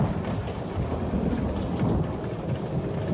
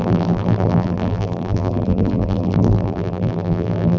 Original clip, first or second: first